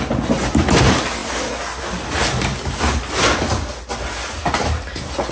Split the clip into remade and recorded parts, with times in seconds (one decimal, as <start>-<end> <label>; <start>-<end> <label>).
0.0-5.3 recorded